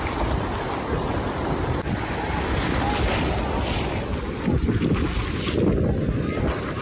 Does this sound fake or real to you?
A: real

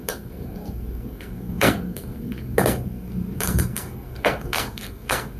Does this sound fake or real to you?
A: fake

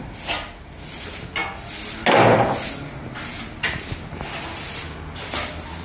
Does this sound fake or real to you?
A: real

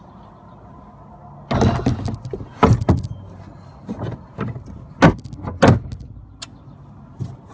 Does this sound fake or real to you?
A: real